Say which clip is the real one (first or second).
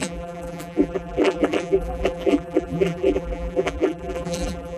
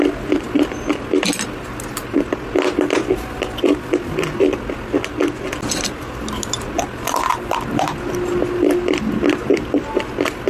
second